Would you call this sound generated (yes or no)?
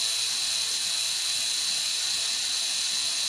no